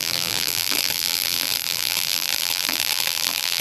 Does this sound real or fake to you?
fake